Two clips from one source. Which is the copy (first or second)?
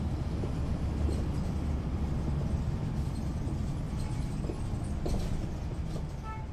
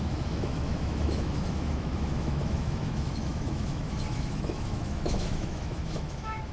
second